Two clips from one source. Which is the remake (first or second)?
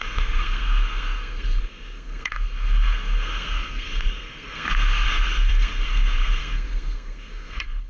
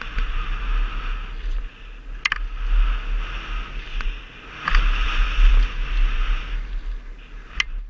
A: first